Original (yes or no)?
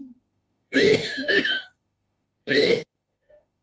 no